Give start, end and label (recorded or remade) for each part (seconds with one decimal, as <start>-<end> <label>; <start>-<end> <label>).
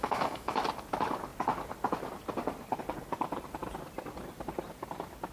0.0-0.6 remade; 0.6-5.3 recorded